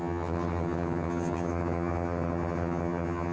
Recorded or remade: remade